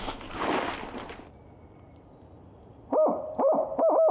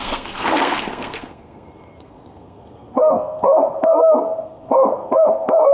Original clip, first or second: first